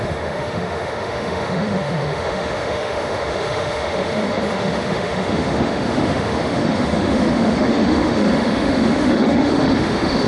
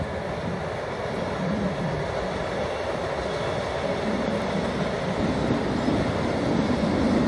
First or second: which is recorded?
second